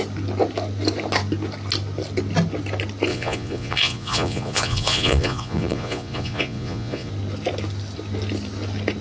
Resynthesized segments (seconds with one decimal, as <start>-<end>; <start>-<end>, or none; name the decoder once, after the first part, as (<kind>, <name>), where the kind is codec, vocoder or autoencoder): 3.1-7.1 (vocoder, Vocos)